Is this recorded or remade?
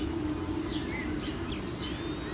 recorded